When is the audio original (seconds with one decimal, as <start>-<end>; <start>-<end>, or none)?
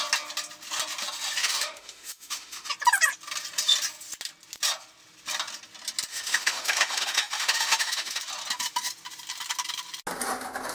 0.0-1.4; 2.7-6.1; 8.2-10.7